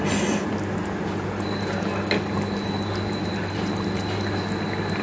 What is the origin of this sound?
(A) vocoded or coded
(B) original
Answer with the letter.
B